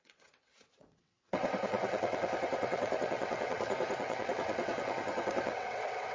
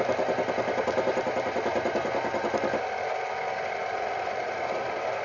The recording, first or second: second